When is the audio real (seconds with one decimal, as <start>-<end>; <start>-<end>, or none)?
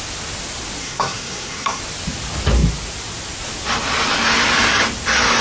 0.0-0.8; 1.8-5.4